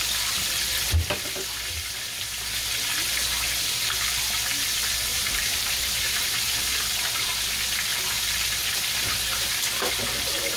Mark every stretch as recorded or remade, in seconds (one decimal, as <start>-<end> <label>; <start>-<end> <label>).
0.0-5.1 recorded; 5.1-6.8 remade; 6.8-10.6 recorded